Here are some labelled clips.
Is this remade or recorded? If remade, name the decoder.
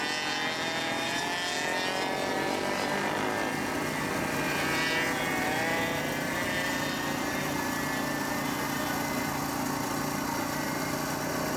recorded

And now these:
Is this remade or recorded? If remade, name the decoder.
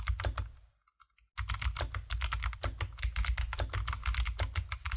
recorded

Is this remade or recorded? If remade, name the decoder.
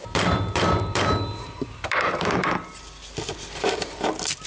remade, vocoder, BigVGAN v2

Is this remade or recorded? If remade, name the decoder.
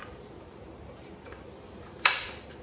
remade, vocoder, BigVGAN v2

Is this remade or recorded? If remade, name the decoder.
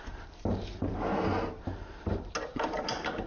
recorded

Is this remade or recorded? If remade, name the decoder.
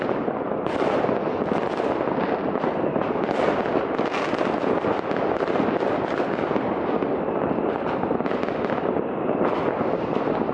recorded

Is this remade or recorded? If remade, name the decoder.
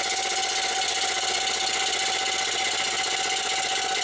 recorded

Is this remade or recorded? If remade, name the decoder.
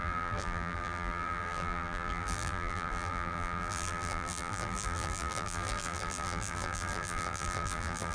remade, vocoder, BigVGAN v2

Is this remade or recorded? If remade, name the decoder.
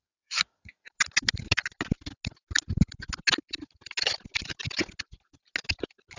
recorded